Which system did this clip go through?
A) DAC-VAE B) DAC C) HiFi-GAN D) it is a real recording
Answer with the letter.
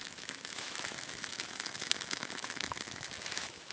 A